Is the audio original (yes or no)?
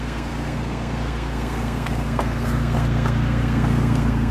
no